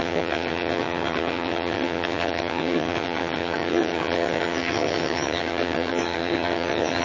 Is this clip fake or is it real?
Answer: fake